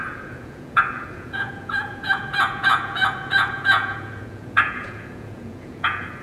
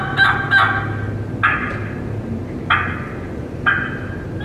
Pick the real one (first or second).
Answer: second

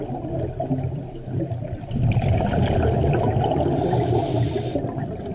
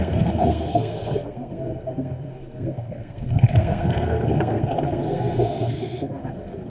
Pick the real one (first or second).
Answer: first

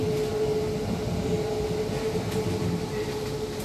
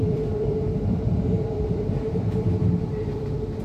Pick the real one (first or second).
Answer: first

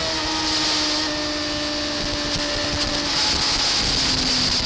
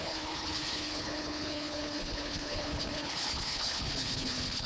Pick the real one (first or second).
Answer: first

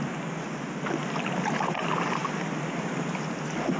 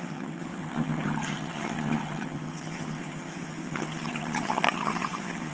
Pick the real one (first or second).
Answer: first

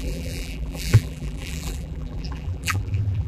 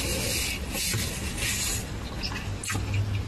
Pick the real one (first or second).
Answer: second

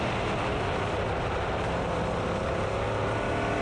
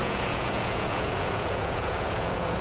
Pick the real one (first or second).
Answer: first